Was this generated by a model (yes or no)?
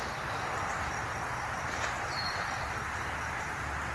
no